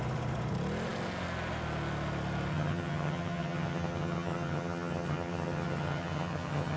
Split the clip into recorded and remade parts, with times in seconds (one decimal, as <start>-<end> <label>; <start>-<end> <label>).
0.0-2.5 recorded; 2.5-6.8 remade